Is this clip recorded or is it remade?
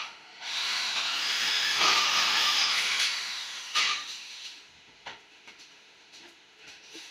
remade